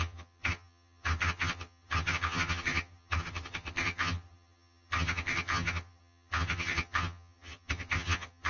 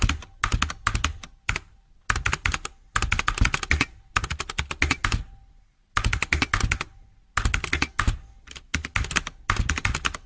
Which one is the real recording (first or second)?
second